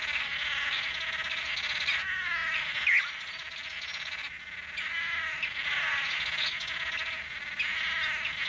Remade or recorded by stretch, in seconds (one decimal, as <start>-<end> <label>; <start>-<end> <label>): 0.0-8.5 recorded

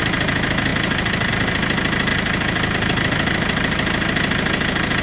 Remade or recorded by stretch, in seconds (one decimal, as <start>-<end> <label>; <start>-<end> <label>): 0.0-5.0 recorded

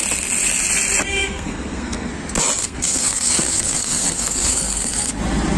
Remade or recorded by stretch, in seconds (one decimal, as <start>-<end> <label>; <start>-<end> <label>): 0.0-1.1 recorded; 1.1-2.1 remade; 2.1-2.6 recorded; 2.6-5.1 remade; 5.1-5.6 recorded

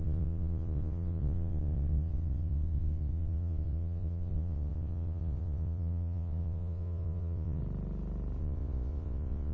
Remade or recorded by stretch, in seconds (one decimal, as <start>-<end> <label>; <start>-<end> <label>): 0.0-7.6 remade; 7.6-8.4 recorded; 8.4-9.5 remade

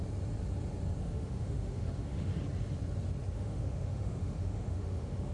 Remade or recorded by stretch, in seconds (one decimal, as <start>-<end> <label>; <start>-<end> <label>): 0.0-1.0 recorded; 1.0-2.3 remade; 2.3-3.3 recorded; 3.3-5.3 remade